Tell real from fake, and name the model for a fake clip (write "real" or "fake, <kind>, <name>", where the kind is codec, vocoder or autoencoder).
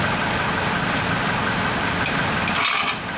real